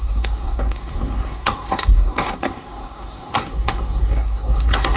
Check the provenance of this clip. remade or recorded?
remade